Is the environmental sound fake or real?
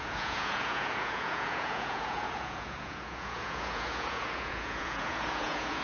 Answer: fake